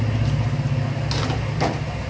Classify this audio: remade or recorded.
recorded